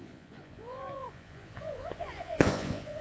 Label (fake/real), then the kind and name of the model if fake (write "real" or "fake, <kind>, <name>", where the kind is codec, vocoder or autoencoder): fake, vocoder, Vocos